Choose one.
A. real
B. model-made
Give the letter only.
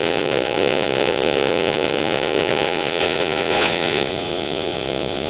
B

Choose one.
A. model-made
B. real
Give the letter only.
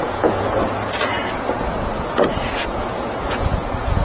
A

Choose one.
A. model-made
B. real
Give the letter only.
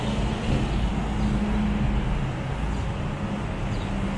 B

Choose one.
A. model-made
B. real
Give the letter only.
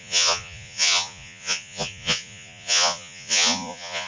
A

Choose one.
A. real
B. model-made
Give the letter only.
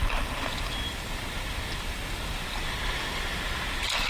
A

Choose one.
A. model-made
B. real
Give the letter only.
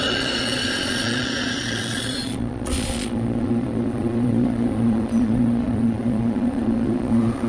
A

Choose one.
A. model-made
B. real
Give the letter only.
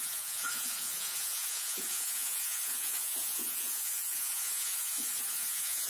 A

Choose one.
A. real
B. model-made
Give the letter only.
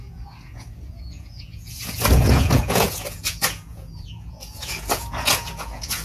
B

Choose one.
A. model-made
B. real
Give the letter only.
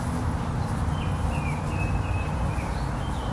B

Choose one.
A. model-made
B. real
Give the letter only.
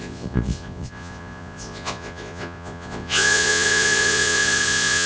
A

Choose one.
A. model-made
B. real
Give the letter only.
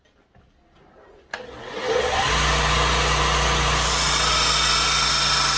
B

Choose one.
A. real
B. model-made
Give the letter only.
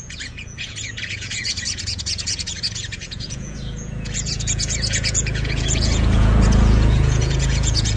B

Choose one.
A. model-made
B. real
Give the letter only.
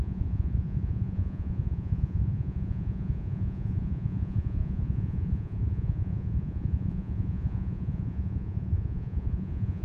A